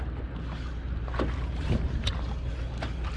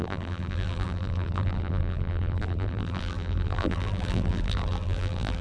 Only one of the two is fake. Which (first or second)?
second